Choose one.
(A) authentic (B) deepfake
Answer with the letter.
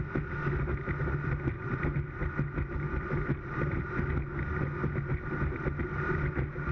A